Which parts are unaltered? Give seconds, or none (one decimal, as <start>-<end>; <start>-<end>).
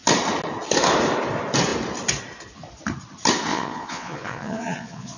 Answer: 0.0-3.5